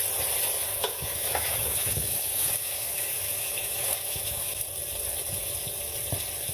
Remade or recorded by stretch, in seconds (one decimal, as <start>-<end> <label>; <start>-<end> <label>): 0.0-0.7 recorded; 0.7-4.6 remade; 4.6-6.5 recorded

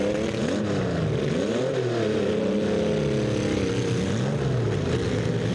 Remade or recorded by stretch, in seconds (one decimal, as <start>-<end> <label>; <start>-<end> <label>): 0.0-5.5 recorded

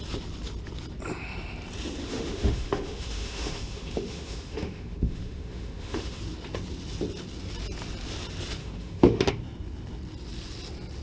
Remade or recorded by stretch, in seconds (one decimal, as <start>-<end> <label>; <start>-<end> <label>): 0.0-2.0 recorded; 2.0-6.2 remade; 6.2-8.6 recorded; 8.6-9.3 remade; 9.3-11.0 recorded

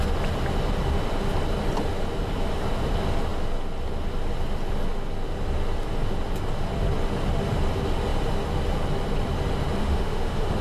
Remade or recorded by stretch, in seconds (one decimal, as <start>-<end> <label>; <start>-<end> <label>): 0.0-9.8 recorded; 9.8-10.6 remade

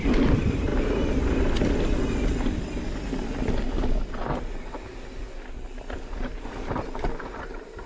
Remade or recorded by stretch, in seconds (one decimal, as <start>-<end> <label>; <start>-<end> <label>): 0.0-7.9 recorded